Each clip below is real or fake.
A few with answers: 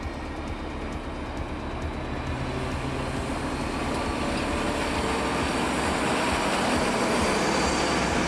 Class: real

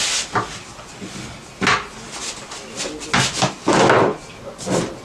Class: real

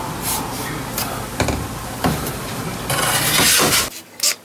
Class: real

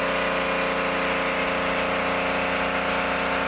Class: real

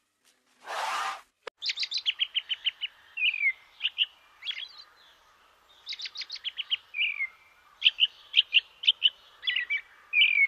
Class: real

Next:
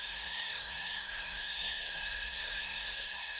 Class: fake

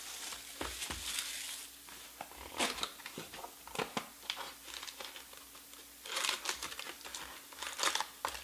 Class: real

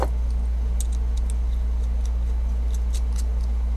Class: real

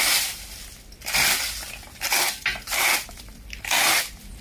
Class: real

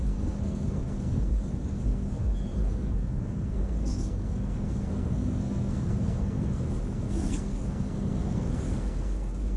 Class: fake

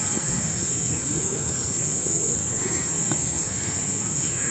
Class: fake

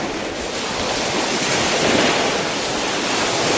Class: real